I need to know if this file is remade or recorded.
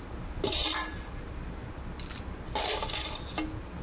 recorded